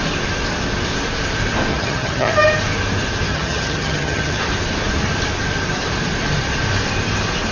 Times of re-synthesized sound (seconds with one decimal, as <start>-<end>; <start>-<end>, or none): 1.7-2.3; 3.3-4.4